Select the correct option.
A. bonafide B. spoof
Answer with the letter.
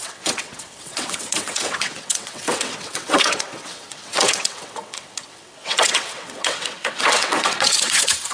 B